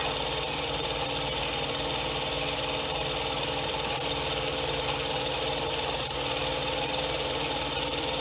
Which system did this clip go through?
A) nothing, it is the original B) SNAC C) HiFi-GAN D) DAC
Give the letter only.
A